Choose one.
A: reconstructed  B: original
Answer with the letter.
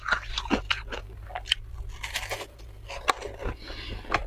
B